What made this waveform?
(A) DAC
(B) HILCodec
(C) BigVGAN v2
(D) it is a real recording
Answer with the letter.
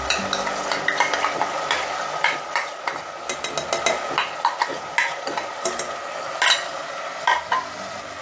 D